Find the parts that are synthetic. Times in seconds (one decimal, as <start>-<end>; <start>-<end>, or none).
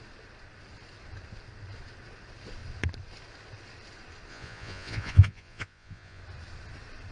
4.3-6.2